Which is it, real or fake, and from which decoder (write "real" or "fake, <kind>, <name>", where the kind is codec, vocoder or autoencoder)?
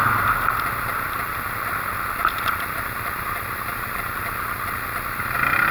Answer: real